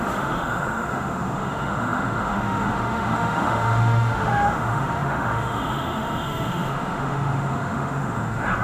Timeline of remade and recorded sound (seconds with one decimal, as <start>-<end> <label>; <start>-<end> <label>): 0.0-8.6 remade